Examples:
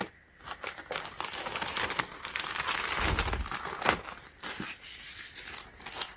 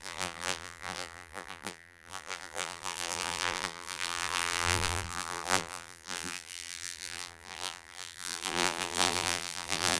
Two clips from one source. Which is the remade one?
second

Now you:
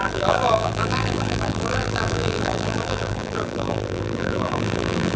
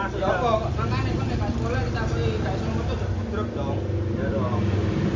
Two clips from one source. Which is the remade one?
first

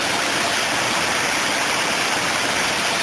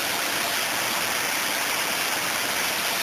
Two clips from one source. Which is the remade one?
first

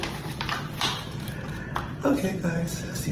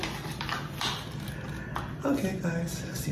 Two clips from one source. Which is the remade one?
first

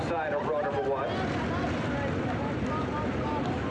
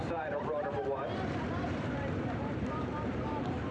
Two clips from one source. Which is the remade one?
second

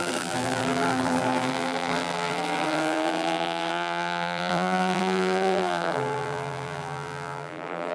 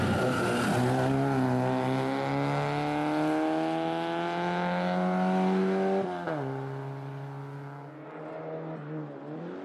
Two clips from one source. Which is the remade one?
first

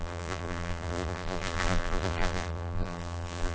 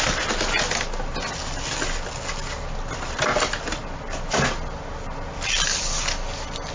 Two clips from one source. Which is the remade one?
first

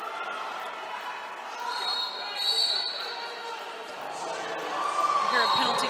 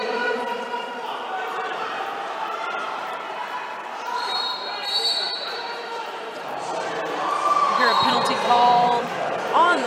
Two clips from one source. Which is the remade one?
second